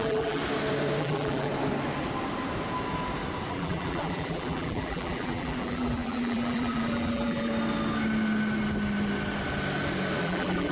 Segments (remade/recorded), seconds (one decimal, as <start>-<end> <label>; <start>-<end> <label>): 0.0-0.4 remade; 0.4-1.0 recorded; 1.0-1.5 remade; 1.5-3.5 recorded; 3.5-7.5 remade; 7.5-10.2 recorded; 10.2-10.7 remade